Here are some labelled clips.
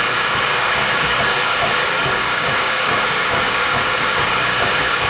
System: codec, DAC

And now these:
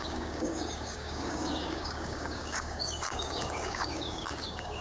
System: codec, DAC